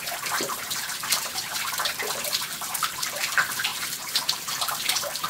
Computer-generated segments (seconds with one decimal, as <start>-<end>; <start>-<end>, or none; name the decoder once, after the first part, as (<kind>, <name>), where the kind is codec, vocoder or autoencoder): 0.0-5.3 (vocoder, BigVGAN v2)